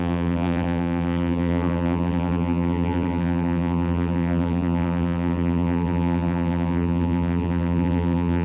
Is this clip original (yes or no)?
no